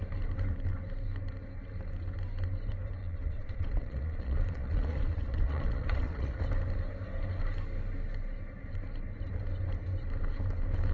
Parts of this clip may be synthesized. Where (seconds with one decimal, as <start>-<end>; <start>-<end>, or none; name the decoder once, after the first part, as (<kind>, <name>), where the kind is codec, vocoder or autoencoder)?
3.0-6.4 (vocoder, Vocos)